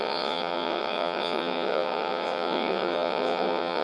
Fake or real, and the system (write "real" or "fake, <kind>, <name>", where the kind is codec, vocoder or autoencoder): fake, vocoder, WaveNeXt